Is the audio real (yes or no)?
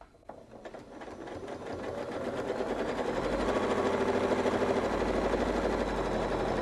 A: yes